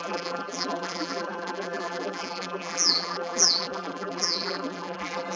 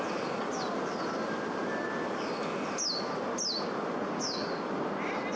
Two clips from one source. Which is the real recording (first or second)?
second